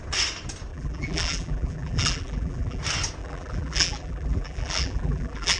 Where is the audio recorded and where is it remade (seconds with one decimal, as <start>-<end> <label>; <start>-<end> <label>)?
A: 0.0-0.7 recorded; 0.7-2.8 remade; 2.8-3.2 recorded; 3.2-5.6 remade